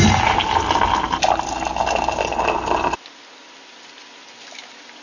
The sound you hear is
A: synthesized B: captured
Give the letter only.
B